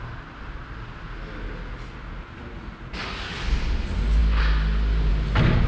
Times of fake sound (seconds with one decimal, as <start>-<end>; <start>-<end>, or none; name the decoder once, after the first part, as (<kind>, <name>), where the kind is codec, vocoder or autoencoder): none